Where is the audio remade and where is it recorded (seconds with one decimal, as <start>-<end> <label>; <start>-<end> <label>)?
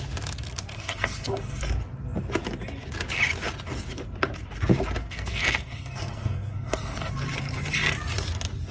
0.0-0.7 recorded; 0.7-1.6 remade; 1.6-5.0 recorded; 5.0-7.1 remade; 7.1-8.7 recorded